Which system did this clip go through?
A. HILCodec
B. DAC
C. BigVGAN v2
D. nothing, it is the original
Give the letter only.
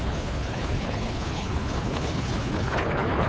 A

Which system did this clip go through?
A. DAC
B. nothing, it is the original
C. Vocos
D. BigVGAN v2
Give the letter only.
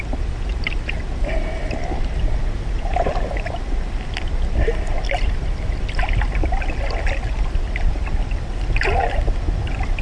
B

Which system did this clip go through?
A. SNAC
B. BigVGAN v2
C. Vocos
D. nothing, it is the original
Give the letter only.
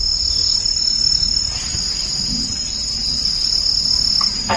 D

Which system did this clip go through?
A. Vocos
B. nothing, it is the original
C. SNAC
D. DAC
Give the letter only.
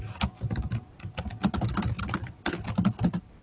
B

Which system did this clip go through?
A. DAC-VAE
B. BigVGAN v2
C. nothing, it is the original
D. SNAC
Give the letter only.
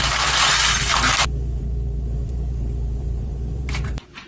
B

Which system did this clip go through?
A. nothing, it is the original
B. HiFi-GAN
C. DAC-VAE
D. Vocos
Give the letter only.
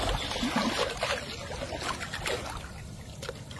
A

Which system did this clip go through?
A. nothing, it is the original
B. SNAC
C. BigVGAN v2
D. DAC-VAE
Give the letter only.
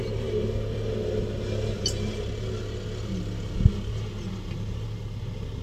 A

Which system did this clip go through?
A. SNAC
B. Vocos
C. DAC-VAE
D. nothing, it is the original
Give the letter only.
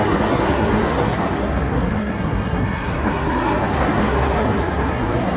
A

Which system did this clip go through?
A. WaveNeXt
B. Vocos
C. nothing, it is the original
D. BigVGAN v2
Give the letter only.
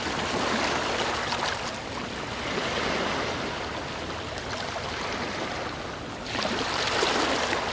C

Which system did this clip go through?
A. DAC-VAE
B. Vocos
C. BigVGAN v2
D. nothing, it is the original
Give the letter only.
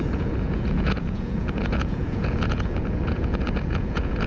B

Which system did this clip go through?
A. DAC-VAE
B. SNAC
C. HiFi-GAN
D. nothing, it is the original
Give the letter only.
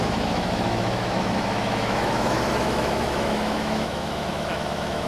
A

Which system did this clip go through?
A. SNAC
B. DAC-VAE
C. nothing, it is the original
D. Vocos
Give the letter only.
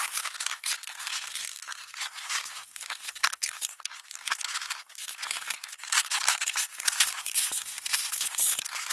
A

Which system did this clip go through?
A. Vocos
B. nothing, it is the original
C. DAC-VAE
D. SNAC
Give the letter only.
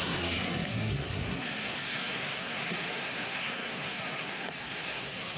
D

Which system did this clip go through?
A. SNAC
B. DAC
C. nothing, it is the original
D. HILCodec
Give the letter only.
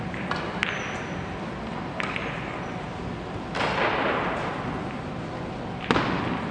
C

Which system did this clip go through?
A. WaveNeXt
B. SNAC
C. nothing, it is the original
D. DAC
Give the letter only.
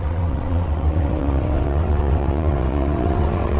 A